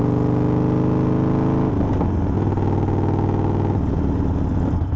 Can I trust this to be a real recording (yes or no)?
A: yes